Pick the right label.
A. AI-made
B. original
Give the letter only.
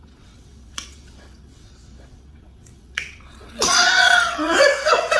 A